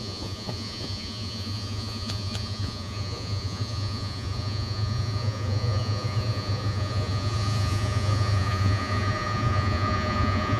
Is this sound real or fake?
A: fake